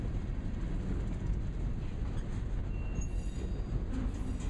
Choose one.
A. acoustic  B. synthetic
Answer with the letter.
A